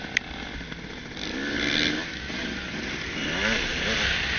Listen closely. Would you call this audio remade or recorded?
recorded